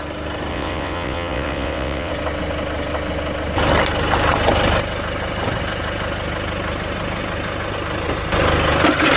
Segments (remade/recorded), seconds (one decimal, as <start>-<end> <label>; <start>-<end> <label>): 0.0-0.5 recorded; 0.5-2.1 remade; 2.1-9.2 recorded